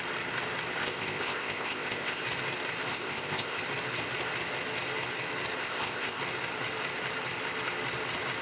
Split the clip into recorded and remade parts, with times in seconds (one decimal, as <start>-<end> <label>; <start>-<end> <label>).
0.0-0.8 recorded; 0.8-2.2 remade; 2.2-2.9 recorded; 2.9-3.6 remade; 3.6-5.6 recorded; 5.6-6.2 remade; 6.2-8.4 recorded